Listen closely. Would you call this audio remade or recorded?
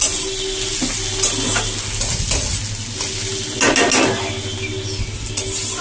recorded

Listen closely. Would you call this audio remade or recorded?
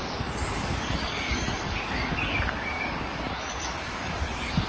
remade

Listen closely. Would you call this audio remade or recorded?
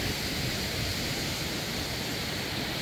remade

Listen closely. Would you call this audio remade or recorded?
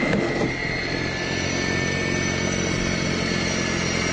recorded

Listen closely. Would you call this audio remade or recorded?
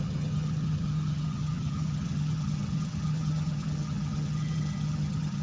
remade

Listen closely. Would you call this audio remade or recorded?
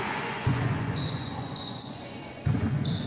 remade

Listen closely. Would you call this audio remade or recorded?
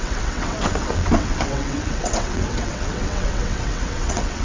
remade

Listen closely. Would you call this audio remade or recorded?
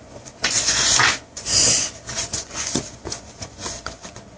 remade